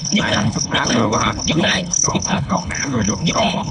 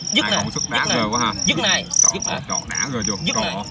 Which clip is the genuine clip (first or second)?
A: second